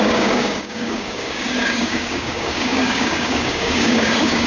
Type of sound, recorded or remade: remade